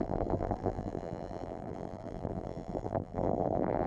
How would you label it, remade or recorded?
remade